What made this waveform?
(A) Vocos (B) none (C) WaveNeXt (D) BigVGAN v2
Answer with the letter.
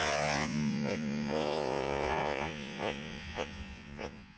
A